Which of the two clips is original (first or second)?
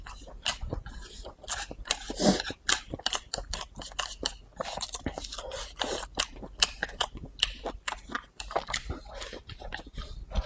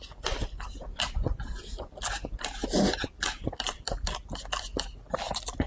second